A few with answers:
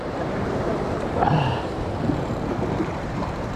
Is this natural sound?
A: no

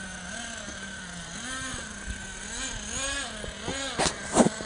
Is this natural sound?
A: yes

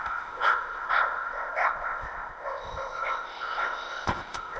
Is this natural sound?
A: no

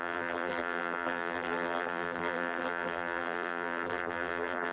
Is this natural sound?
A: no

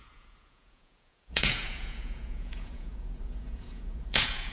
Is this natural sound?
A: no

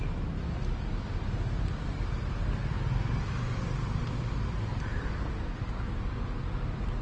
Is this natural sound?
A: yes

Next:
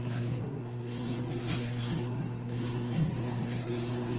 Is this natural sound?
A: no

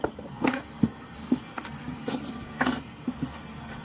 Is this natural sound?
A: no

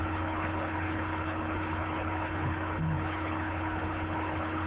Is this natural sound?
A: no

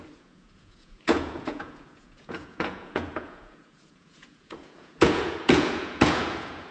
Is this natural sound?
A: no